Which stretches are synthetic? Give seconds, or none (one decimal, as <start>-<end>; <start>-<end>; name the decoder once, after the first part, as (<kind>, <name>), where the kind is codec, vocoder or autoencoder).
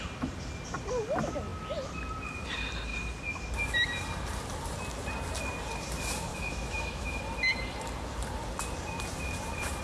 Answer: 6.3-7.2 (autoencoder, DAC-VAE)